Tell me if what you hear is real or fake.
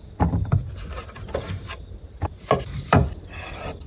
real